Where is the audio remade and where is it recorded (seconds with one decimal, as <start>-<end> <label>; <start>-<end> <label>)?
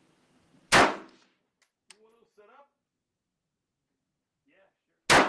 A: 0.0-5.3 recorded